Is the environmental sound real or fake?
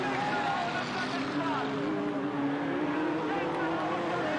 real